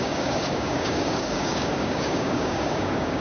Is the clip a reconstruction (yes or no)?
yes